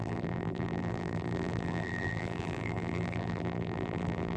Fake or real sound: fake